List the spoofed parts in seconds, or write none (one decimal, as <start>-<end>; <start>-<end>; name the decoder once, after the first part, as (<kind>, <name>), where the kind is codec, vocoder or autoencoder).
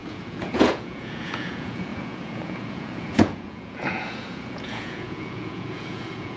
0.0-6.4 (vocoder, Vocos)